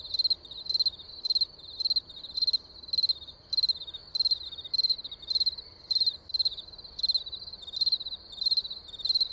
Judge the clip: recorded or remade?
recorded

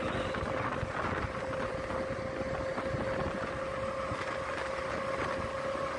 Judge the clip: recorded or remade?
recorded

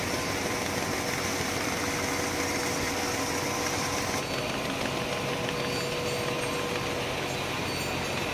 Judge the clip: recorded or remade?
recorded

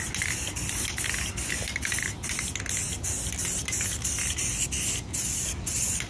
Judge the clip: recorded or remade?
recorded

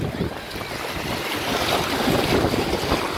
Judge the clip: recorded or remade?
recorded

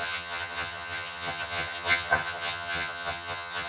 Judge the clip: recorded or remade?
remade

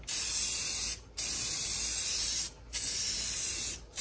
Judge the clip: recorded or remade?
recorded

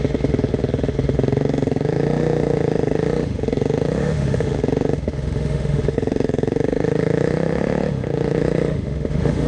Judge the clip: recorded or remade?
remade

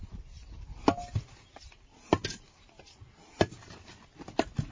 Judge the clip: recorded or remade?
recorded